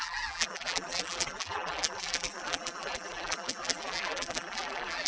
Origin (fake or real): fake